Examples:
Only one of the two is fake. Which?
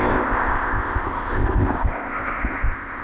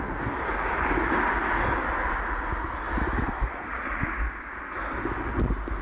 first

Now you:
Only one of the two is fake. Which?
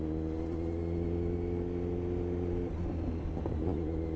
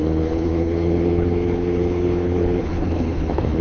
second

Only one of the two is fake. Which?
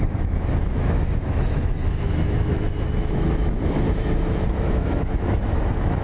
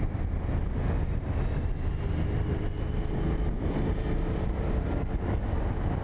first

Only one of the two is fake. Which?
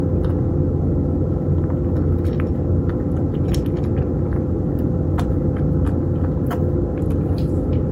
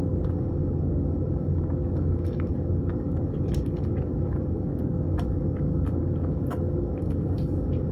second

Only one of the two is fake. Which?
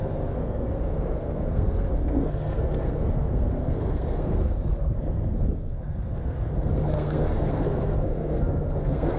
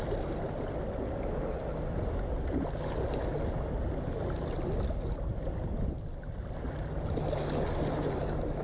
first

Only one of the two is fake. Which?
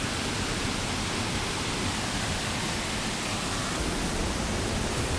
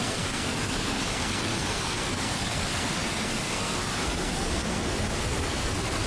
second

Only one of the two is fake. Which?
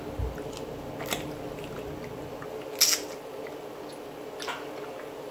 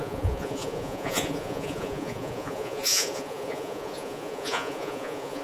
second